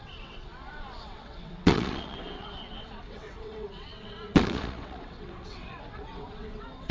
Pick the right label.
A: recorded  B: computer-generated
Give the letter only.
B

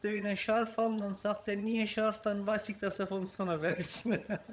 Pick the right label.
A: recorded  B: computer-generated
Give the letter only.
B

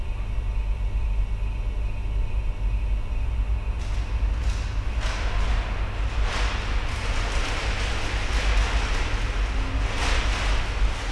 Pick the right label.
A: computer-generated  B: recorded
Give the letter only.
B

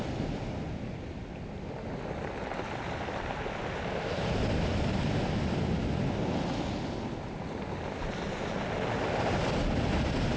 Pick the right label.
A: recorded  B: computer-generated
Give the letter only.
A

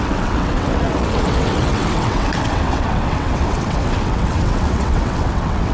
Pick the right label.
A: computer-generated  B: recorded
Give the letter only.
A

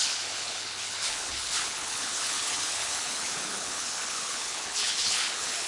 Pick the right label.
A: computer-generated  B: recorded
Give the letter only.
A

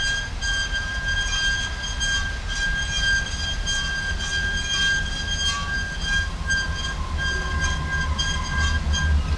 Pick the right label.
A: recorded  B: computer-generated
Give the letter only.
A